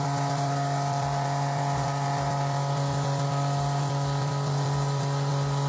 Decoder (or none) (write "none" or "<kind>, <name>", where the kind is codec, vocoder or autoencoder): none